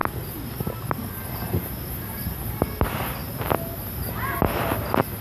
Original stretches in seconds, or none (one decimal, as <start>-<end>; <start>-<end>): 0.0-5.2